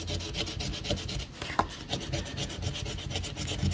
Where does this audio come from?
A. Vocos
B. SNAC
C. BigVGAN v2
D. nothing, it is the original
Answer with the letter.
D